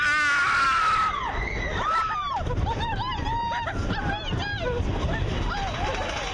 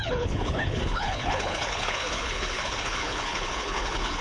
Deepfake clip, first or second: second